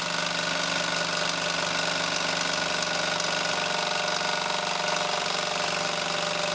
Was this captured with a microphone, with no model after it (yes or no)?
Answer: yes